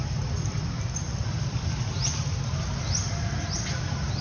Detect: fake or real real